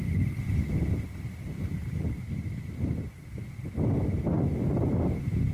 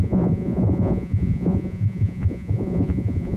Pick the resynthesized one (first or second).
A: second